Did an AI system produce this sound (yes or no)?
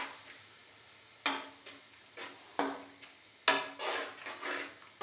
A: no